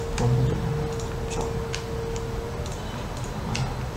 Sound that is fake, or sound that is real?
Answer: real